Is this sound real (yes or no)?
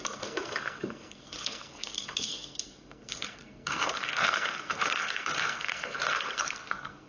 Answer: no